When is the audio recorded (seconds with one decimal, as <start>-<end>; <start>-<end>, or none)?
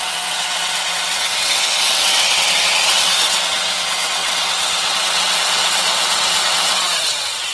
none